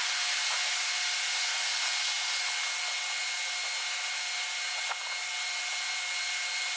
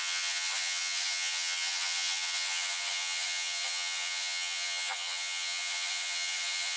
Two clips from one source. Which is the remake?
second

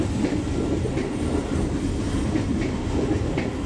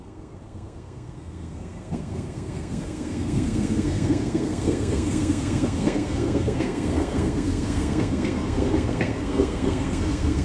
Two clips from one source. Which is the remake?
second